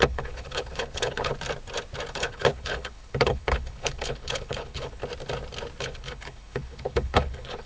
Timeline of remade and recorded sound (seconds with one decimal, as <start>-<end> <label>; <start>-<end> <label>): 0.0-1.3 remade; 1.3-2.1 recorded; 2.1-5.0 remade; 5.0-5.8 recorded; 5.8-7.7 remade